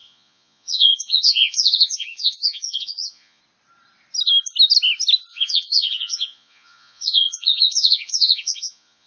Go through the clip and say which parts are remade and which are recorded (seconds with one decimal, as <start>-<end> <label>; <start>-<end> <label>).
0.0-3.4 remade; 3.4-5.3 recorded; 5.3-9.1 remade